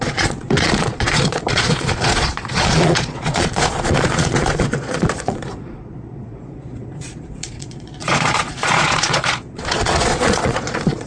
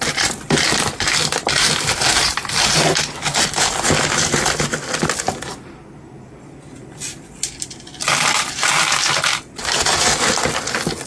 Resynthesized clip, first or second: first